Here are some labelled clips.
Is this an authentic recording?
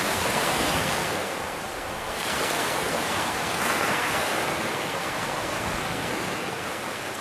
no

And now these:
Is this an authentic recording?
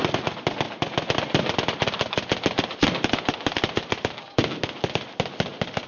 yes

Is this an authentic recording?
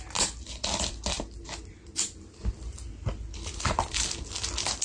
yes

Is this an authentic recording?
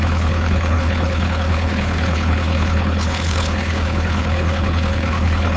no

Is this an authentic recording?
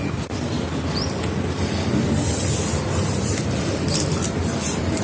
yes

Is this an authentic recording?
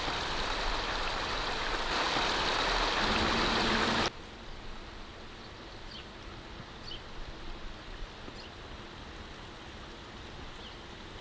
yes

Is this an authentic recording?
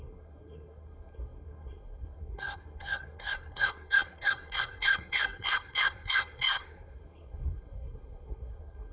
no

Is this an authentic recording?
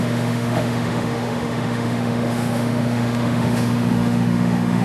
no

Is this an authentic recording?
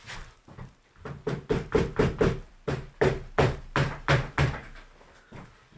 yes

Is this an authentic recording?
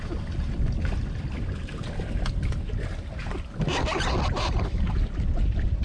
yes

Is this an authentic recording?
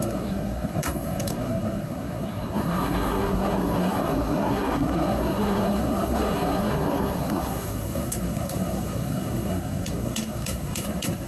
no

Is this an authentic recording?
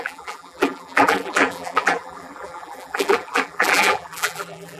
no